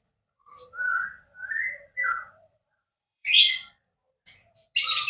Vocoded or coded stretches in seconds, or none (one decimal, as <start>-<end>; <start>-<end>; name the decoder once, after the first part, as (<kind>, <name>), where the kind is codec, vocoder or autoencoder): 0.9-3.4 (vocoder, BigVGAN v2)